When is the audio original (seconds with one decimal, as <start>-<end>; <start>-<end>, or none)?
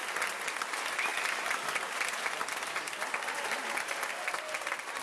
0.0-5.0